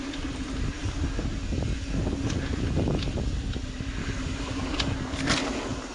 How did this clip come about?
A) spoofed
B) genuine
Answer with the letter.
B